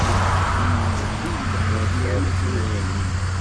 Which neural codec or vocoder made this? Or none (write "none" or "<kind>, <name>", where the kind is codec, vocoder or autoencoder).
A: none